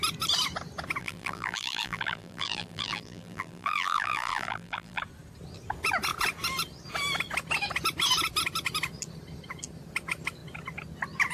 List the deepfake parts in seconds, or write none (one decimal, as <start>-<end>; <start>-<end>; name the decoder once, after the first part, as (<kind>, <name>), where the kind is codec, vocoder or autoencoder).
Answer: 1.0-5.0 (vocoder, BigVGAN v2)